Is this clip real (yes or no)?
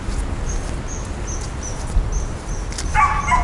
yes